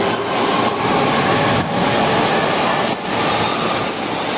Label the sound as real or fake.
real